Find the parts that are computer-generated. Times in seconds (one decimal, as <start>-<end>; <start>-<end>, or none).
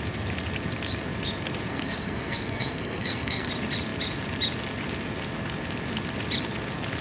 1.7-3.5